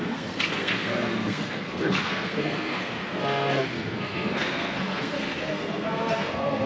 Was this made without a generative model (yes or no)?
no